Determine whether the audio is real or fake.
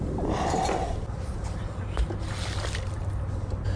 real